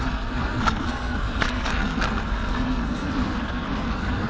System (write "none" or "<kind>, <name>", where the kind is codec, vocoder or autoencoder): codec, SNAC